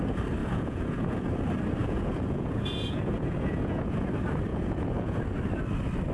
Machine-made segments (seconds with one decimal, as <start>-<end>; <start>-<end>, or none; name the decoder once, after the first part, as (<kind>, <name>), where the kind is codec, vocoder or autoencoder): 0.4-1.3 (vocoder, Vocos); 1.8-4.1; 4.5-5.2